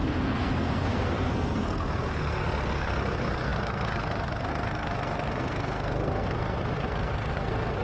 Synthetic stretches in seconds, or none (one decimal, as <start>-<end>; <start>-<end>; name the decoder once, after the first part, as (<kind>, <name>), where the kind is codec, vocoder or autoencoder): 0.0-7.8 (codec, SNAC)